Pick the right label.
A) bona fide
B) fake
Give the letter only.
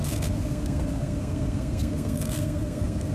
B